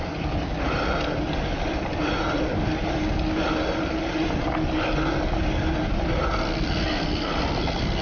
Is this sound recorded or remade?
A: recorded